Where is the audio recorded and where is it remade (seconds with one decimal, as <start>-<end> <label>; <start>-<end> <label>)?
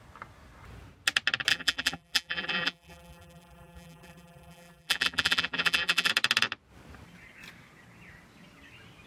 0.0-1.5 recorded; 1.5-6.1 remade; 6.1-9.1 recorded